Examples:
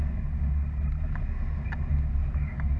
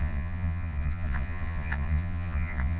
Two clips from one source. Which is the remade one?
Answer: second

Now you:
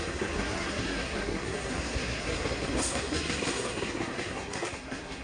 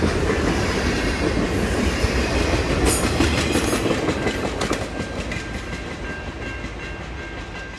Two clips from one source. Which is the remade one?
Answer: first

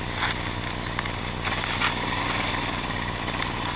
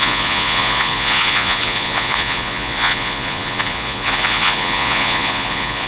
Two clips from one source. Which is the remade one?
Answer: second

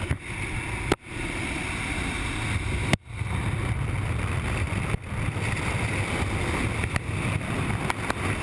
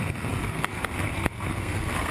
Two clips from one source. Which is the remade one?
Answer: second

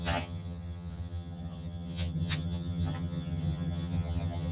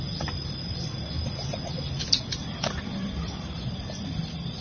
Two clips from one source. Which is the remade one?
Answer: first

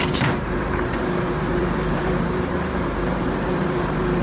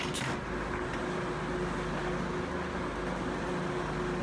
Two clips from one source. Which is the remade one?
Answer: first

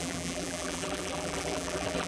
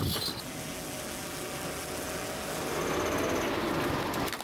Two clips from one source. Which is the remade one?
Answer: first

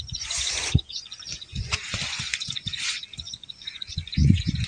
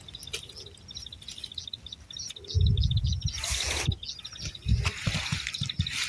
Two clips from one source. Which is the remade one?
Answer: first